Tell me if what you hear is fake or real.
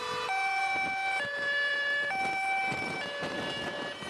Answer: fake